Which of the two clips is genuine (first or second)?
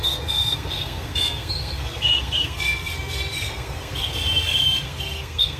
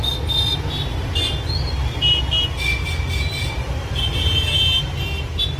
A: second